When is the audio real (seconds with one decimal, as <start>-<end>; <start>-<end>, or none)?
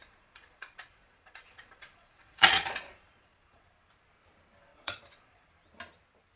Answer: 3.7-4.7; 5.5-6.4